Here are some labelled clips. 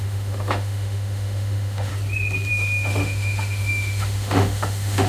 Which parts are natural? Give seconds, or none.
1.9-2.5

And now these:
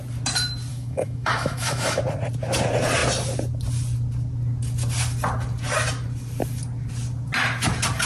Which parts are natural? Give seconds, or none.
0.0-0.7; 2.0-8.1

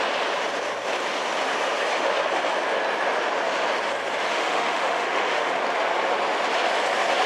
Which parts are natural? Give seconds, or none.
0.0-4.3; 5.5-7.3

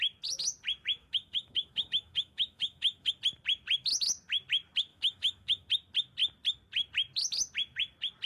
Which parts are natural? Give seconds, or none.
0.0-1.0; 3.1-4.9; 5.7-8.3

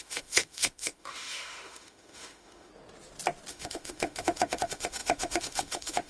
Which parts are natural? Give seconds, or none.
2.7-3.5

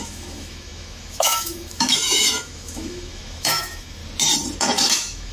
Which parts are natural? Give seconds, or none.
4.0-4.6

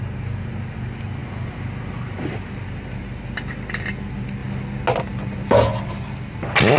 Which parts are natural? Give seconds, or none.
0.0-6.8